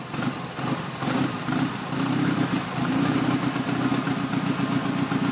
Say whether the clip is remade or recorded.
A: recorded